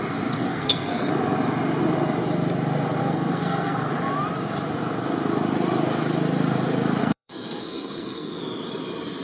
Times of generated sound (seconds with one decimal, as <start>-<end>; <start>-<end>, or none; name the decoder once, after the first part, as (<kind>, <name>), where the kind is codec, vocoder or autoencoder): 0.5-1.1 (codec, SNAC); 3.0-3.9; 7.0-8.4